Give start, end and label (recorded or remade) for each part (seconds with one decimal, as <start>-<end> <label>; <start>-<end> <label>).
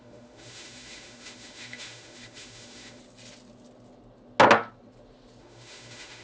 0.0-3.0 remade; 3.0-5.4 recorded; 5.4-6.2 remade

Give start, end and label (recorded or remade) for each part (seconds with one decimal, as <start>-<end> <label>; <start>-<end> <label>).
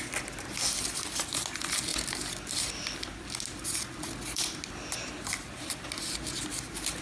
0.0-7.0 recorded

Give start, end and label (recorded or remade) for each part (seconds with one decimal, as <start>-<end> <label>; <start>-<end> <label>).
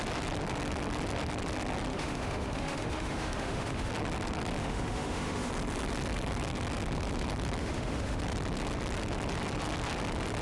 0.0-1.9 recorded; 1.9-3.9 remade; 3.9-4.6 recorded; 4.6-5.5 remade; 5.5-7.6 recorded; 7.6-8.2 remade; 8.2-10.4 recorded